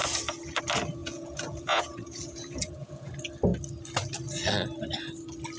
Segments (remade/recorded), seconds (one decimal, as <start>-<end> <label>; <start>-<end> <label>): 0.0-1.0 recorded; 1.0-3.1 remade; 3.1-5.6 recorded